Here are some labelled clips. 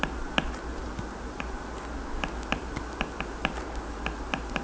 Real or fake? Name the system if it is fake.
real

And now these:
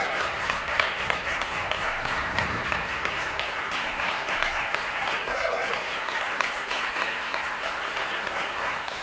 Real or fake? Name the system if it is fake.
fake, codec, SNAC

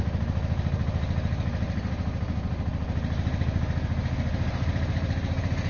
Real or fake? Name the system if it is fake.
real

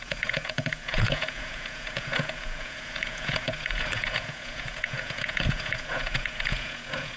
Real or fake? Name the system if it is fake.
fake, vocoder, Vocos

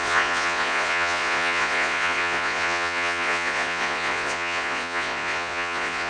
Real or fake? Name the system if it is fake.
fake, vocoder, Vocos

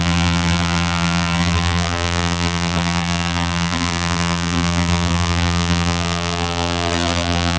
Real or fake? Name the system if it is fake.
fake, vocoder, BigVGAN v2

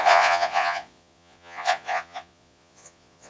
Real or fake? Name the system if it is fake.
fake, vocoder, Vocos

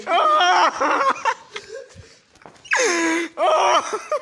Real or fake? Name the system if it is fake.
real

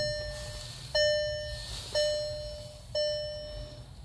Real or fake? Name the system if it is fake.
real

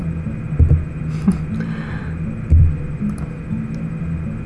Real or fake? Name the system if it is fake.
real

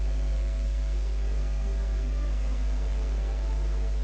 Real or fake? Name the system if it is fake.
fake, codec, SNAC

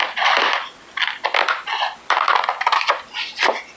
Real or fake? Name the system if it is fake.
real